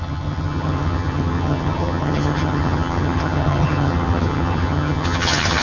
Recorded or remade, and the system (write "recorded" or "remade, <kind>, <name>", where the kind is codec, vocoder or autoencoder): remade, vocoder, HiFi-GAN